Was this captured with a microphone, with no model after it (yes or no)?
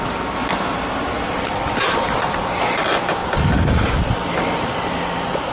yes